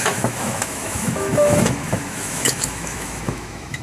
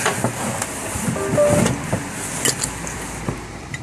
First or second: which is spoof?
first